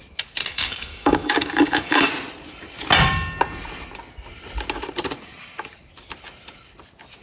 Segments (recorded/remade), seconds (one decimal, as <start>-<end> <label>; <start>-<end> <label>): 0.0-0.5 recorded; 0.5-2.1 remade; 2.1-7.2 recorded